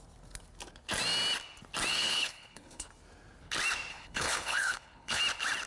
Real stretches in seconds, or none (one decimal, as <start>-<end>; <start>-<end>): 0.0-1.9; 2.9-3.9; 5.2-5.7